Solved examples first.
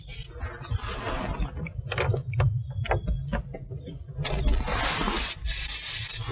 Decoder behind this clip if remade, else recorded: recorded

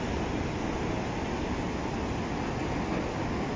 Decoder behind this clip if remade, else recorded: recorded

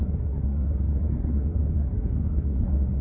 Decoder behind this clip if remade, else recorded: remade, codec, SNAC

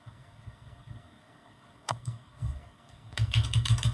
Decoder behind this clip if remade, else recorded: remade, codec, SNAC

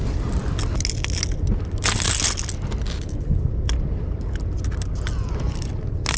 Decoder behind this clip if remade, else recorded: recorded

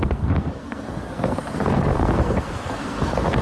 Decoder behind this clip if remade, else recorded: remade, codec, SNAC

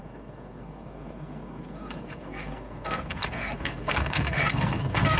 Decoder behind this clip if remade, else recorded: remade, codec, SNAC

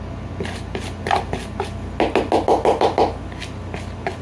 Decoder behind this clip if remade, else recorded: recorded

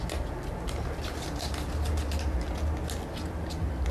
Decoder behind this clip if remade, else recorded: recorded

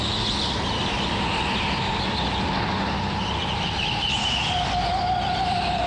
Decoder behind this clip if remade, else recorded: recorded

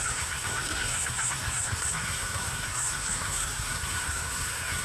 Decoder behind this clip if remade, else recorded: remade, codec, SNAC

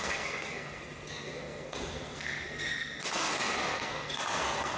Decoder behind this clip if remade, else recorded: remade, codec, SNAC